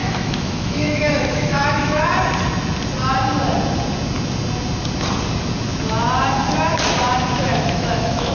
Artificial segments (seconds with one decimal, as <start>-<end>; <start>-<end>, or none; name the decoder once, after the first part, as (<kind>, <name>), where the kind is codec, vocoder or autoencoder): 0.0-2.0 (autoencoder, DAC-VAE); 7.5-8.3